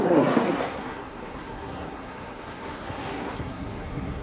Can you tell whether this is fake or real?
fake